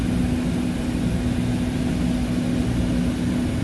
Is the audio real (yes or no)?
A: yes